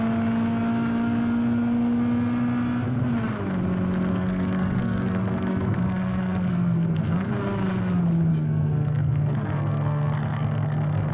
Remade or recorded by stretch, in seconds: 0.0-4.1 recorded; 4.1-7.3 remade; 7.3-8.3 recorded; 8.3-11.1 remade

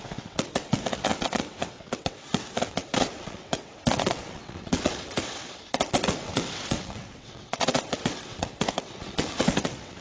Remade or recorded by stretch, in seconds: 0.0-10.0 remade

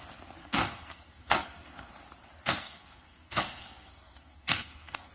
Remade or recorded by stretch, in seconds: 0.0-0.4 recorded; 0.4-1.9 remade; 1.9-2.4 recorded; 2.4-5.1 remade